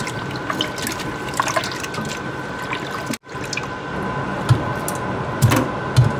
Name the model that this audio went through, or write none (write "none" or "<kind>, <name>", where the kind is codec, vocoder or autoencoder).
none